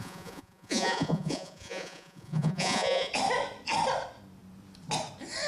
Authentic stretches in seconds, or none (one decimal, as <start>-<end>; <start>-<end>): 3.1-5.5